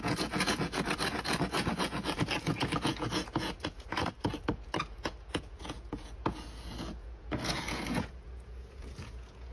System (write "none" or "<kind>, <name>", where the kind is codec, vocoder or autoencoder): vocoder, Vocos